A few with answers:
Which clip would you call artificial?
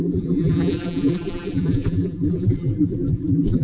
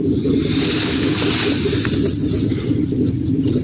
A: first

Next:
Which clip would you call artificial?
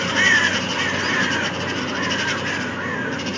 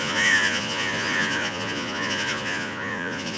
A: second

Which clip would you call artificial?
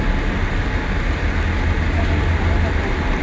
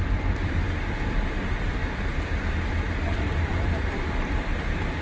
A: second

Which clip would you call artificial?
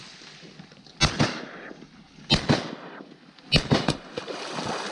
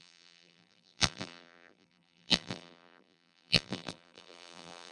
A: second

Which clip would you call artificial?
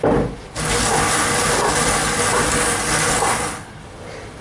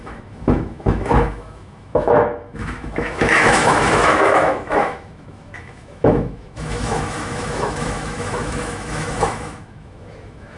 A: second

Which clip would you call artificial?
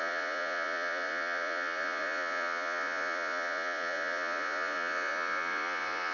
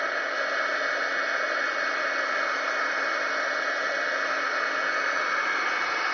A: first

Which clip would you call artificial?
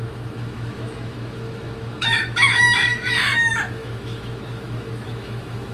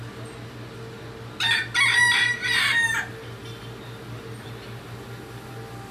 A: first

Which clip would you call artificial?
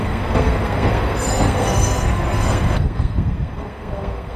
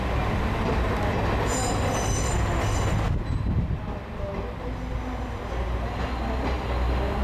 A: first